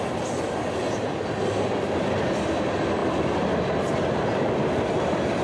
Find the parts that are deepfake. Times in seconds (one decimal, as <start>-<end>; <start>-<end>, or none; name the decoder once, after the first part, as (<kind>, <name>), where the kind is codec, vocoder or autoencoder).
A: none